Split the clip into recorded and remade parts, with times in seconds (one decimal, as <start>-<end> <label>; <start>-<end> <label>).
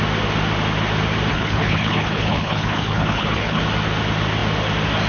0.0-1.3 recorded; 1.3-3.6 remade; 3.6-5.1 recorded